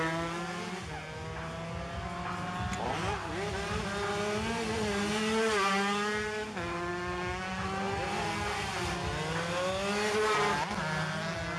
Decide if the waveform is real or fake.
real